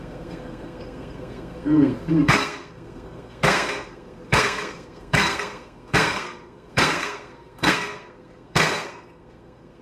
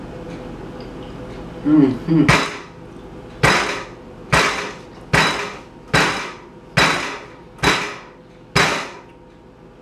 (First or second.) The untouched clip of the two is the second